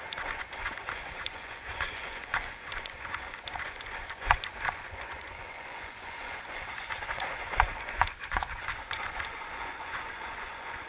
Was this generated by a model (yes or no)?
yes